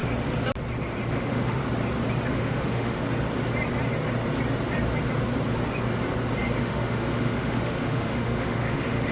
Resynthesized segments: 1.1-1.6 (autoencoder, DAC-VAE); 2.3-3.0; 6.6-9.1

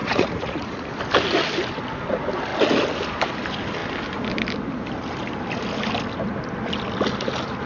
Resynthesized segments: 0.0-0.9 (vocoder, Vocos)

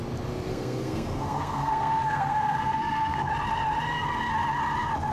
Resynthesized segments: 0.5-3.3 (codec, SNAC)

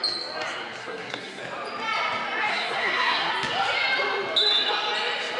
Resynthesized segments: 0.8-1.4 (codec, SNAC); 2.5-3.3

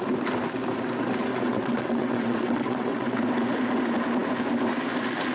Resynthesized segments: 1.3-3.2 (vocoder, WaveNeXt)

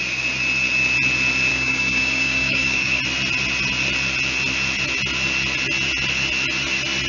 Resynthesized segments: 1.5-3.0 (codec, DAC)